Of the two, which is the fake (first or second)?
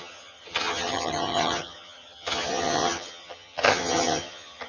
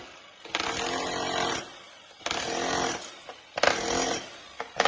first